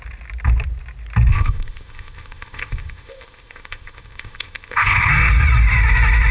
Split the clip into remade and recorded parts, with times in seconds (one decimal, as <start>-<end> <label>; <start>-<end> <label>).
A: 0.0-1.3 recorded; 1.3-5.1 remade; 5.1-6.3 recorded